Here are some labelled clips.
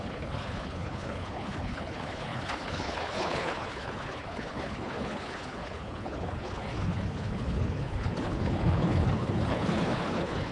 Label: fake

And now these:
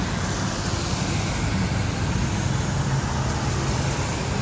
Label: real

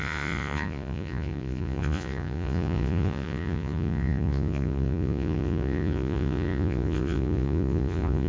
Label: fake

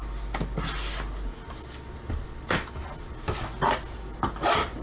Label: real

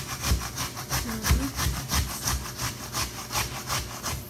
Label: real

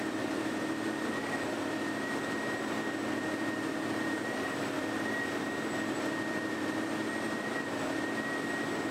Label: fake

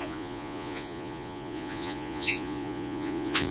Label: fake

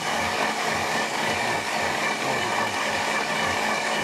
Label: fake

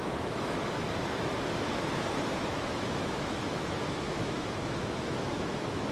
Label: fake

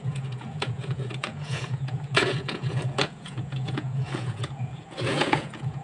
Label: fake